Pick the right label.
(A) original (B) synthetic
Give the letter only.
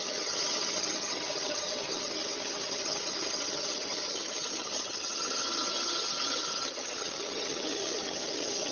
B